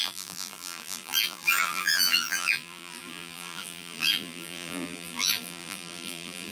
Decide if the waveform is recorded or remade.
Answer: remade